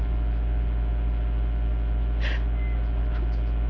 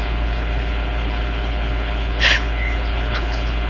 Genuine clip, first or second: first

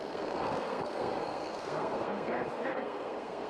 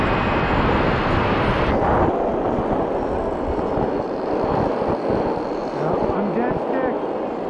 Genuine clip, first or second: second